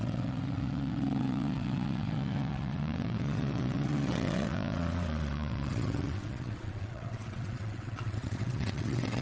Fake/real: fake